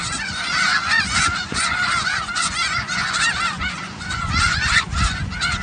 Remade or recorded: remade